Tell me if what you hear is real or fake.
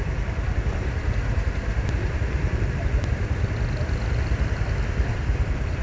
fake